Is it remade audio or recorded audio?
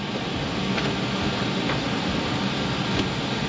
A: recorded